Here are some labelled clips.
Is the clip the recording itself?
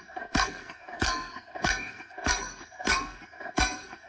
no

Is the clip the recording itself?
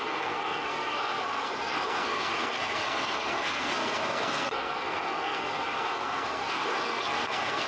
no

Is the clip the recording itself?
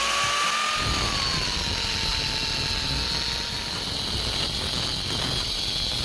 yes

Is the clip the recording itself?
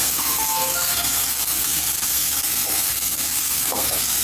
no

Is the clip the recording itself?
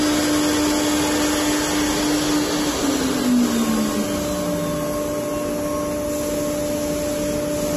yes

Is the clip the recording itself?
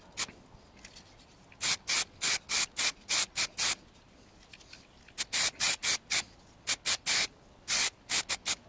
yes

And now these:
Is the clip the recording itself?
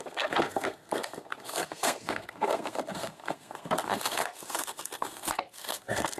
no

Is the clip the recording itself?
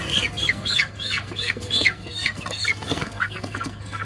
no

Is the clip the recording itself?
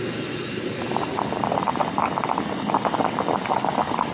yes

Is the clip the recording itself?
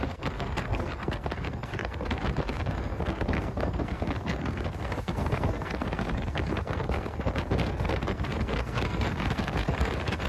no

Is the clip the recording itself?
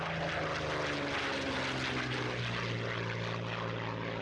yes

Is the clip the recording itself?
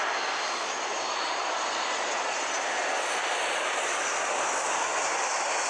yes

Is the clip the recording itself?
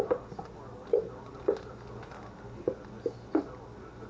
yes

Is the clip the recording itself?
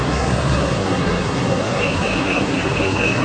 no